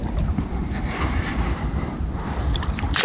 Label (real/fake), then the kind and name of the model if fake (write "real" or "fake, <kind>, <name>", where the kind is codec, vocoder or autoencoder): real